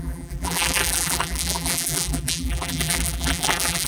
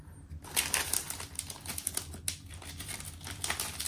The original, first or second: second